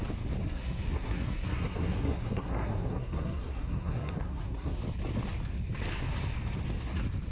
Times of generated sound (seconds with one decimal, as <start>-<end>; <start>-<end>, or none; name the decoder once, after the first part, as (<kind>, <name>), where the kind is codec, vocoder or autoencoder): 0.4-4.8 (codec, SNAC)